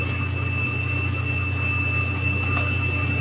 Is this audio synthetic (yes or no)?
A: no